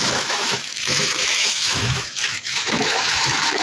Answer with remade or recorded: remade